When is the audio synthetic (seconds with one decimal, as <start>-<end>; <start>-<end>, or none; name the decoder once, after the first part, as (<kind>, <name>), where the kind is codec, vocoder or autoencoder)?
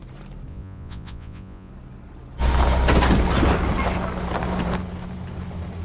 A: 0.5-1.7 (vocoder, Vocos)